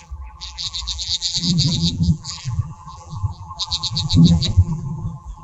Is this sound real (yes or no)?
no